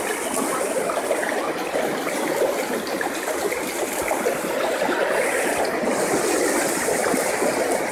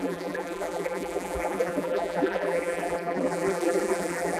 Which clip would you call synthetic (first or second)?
second